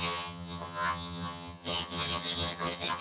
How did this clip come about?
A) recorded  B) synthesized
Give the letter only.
B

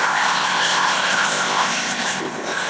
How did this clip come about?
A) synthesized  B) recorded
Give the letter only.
A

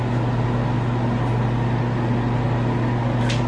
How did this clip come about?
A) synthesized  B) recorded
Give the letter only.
B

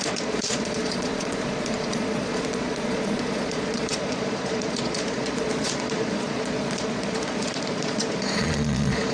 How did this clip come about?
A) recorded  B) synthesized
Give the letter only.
B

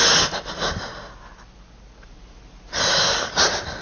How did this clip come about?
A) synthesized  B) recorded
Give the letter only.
B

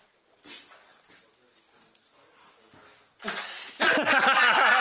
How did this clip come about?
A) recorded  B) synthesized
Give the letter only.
A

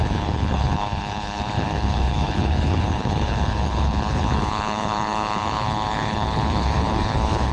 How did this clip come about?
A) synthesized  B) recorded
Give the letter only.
A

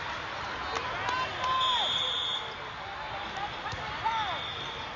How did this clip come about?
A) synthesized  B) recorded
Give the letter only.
B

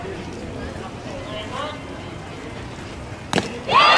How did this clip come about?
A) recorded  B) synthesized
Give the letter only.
A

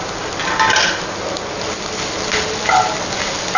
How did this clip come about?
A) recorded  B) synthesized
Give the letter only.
A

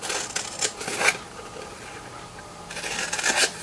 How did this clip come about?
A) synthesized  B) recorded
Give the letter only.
B